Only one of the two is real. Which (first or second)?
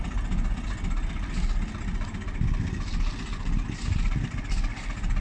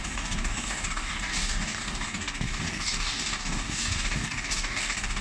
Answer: first